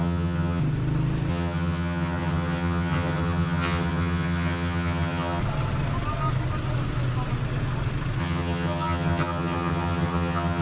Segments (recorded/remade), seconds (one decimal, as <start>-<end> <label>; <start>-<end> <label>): 0.0-0.6 remade; 0.6-1.3 recorded; 1.3-5.4 remade; 5.4-8.2 recorded; 8.2-10.6 remade